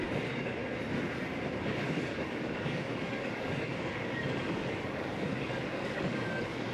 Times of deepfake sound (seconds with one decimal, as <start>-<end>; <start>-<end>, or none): 0.0-0.6; 1.6-6.7